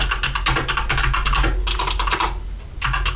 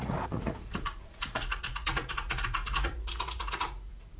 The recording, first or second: first